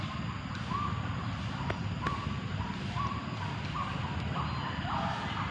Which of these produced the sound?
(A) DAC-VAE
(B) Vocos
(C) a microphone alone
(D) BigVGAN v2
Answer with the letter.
C